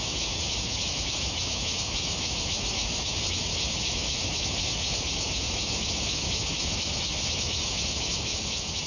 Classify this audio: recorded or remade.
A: remade